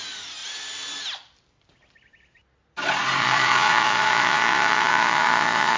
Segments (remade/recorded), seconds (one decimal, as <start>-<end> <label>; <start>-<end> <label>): 0.0-3.2 recorded; 3.2-5.8 remade